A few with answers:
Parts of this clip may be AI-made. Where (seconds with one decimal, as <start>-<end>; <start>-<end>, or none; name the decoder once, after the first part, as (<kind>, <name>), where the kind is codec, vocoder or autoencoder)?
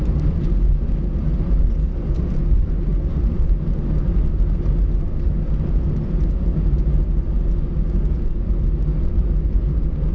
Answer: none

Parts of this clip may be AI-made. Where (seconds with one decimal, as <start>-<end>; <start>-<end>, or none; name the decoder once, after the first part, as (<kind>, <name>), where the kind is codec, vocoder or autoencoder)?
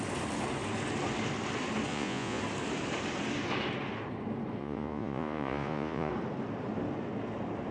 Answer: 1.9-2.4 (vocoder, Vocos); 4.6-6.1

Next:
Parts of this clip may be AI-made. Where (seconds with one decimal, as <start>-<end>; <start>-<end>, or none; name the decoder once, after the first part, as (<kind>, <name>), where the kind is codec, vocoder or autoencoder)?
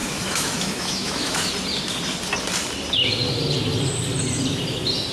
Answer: 0.0-1.5 (autoencoder, DAC-VAE)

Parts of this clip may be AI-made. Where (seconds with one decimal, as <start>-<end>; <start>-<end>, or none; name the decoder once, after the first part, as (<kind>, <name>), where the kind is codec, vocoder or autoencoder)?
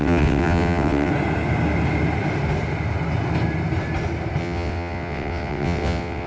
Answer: 0.0-1.1 (vocoder, WaveNeXt); 4.4-6.3